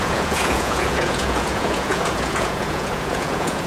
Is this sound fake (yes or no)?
yes